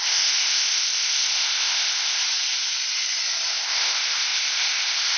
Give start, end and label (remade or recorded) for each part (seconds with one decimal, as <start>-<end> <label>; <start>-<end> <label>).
0.0-2.2 remade; 2.2-3.5 recorded; 3.5-5.2 remade